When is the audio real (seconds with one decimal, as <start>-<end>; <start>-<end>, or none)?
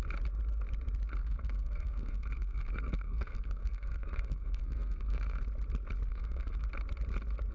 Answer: 0.0-1.2; 5.4-6.1; 6.7-7.5